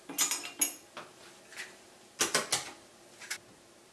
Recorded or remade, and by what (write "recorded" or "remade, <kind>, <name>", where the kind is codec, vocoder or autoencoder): recorded